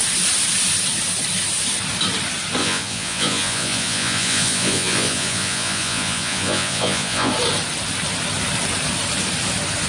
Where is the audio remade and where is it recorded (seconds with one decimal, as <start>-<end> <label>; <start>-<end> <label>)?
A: 0.0-2.6 recorded; 2.6-7.3 remade; 7.3-9.9 recorded